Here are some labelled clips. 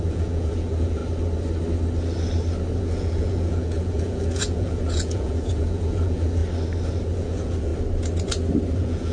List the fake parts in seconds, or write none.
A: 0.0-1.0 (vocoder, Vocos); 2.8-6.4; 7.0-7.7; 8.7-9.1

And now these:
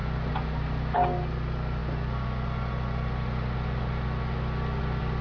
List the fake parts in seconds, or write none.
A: none

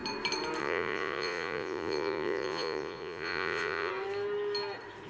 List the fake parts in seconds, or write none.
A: 0.6-3.9 (vocoder, Vocos)

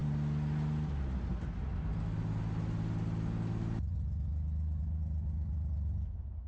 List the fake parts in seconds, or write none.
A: none